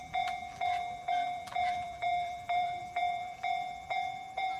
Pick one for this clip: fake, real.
fake